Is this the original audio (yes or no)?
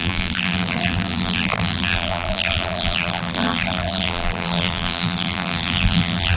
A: no